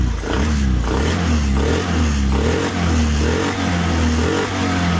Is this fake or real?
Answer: real